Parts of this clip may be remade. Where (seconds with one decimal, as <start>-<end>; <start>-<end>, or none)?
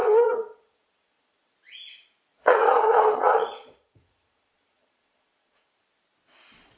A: 0.0-1.5; 2.3-5.7